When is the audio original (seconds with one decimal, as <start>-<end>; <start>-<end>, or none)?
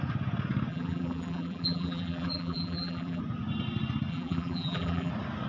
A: 0.0-0.7; 3.2-4.1; 5.1-5.5